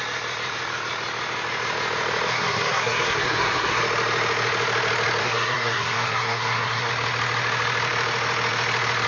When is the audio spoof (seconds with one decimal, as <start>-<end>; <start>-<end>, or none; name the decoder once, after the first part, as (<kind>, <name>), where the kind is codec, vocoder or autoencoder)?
2.3-3.8 (codec, SNAC); 5.2-6.9